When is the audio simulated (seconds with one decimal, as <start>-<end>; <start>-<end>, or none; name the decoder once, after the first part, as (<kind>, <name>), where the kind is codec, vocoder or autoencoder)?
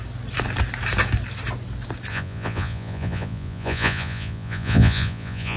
2.1-5.6 (vocoder, Vocos)